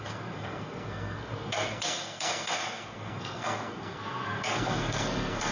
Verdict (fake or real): fake